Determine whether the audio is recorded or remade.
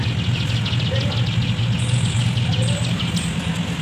recorded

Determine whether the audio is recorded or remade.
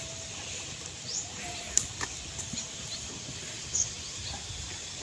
remade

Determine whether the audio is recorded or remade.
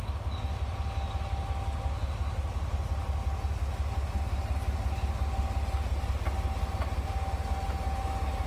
recorded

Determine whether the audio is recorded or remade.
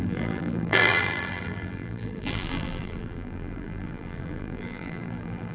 remade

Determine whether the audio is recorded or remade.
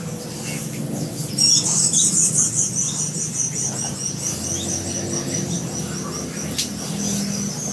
recorded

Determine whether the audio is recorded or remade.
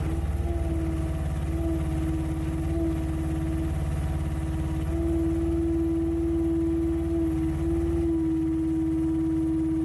recorded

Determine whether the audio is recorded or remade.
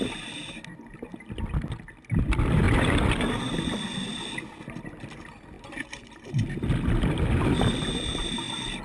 recorded